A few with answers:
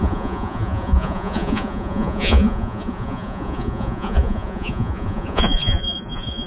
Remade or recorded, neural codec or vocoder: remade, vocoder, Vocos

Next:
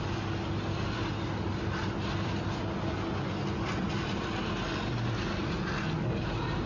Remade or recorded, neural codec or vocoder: recorded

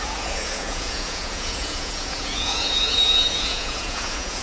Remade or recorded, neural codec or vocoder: remade, vocoder, Vocos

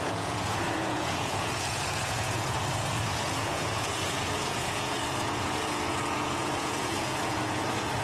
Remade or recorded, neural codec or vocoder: remade, vocoder, Vocos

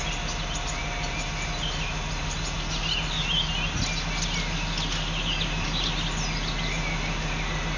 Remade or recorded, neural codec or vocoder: recorded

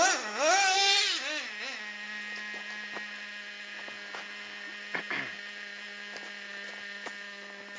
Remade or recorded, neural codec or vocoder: recorded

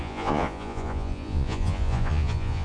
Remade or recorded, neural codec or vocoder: remade, vocoder, Vocos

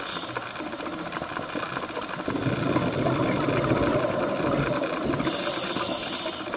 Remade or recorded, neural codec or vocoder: recorded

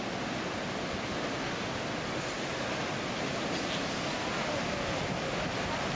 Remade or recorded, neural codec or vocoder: recorded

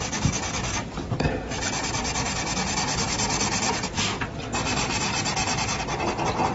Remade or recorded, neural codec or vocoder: recorded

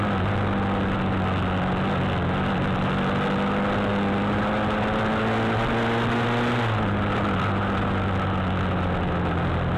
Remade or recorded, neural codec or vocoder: recorded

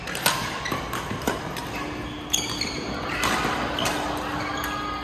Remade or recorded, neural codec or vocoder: recorded